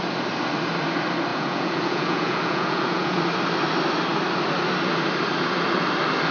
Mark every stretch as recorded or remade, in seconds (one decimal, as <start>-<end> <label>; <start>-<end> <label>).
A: 0.0-1.3 recorded; 1.3-3.2 remade; 3.2-6.3 recorded